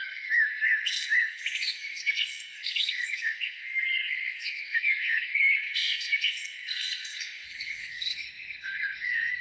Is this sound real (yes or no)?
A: no